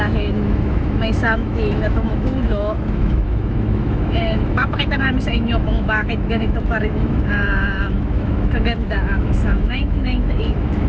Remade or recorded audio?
remade